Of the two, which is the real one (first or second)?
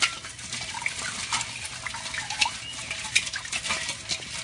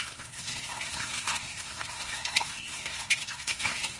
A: first